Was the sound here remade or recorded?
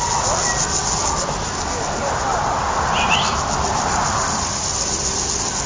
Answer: recorded